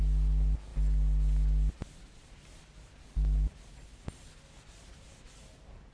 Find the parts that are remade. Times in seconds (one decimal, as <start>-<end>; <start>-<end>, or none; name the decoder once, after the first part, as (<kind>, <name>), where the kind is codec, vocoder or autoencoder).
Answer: none